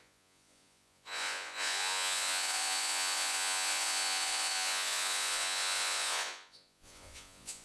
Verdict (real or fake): fake